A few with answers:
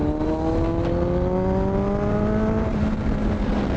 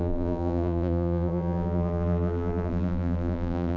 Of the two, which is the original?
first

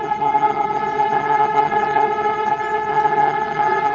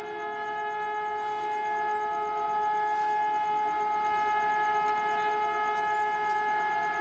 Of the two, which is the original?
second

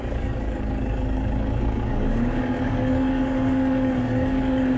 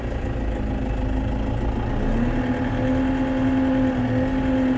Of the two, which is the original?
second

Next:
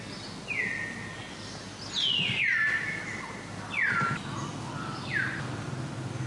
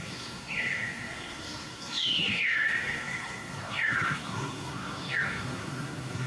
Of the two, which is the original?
first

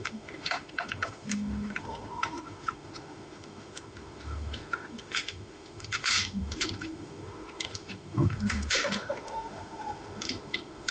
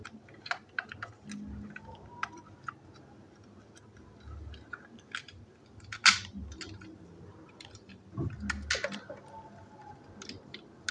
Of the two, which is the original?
second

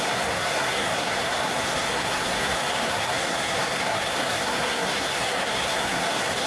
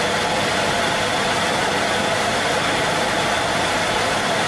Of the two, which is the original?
second